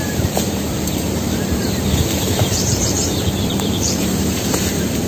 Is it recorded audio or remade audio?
remade